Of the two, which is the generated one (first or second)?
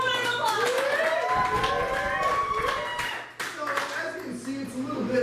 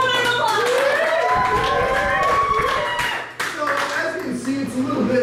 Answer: second